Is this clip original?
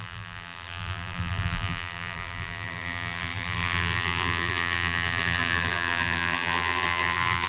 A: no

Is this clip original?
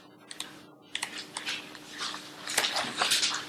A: yes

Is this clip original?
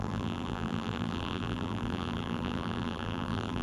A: no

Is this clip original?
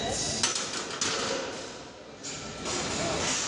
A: yes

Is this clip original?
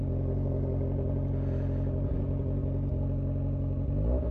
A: yes